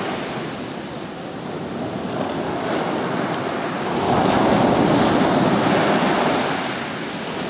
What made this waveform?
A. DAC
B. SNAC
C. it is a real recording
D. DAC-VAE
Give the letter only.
C